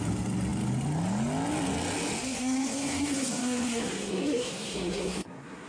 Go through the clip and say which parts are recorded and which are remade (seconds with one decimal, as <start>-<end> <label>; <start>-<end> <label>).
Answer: 0.0-2.2 recorded; 2.2-5.7 remade